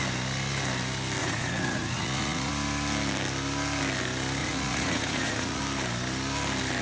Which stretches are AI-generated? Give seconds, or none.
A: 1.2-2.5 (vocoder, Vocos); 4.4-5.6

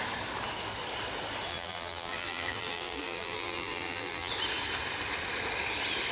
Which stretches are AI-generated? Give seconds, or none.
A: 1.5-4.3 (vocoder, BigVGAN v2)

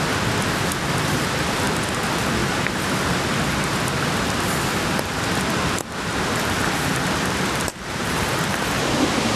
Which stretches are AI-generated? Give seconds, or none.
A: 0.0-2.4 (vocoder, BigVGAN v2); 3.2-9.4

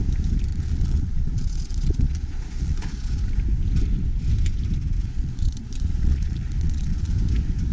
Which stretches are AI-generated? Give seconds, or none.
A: 0.5-3.2 (vocoder, Vocos); 5.0-7.1